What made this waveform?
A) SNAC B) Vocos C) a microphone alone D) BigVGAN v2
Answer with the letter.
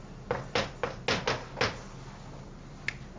C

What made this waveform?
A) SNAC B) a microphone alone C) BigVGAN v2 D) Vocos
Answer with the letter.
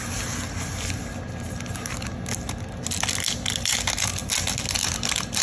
B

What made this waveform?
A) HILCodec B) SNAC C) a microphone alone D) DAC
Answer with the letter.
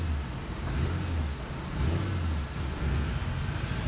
C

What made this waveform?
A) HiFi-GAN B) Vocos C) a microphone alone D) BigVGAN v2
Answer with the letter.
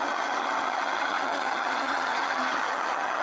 A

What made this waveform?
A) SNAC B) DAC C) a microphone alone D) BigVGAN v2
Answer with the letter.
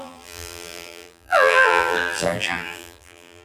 D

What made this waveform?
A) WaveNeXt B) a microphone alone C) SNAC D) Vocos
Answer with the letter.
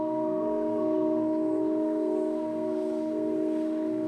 C